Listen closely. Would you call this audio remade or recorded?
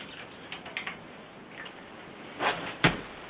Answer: recorded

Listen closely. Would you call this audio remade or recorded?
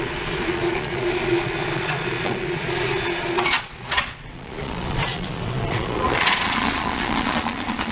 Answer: remade